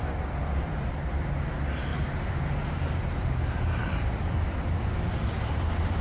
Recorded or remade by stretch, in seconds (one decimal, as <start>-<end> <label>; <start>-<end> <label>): 0.0-1.9 recorded; 1.9-3.3 remade; 3.3-6.0 recorded